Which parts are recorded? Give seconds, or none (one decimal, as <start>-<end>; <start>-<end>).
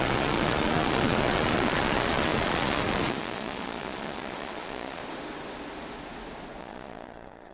5.0-6.6